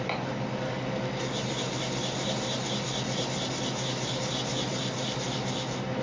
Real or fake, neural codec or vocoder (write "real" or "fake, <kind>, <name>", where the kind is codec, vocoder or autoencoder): real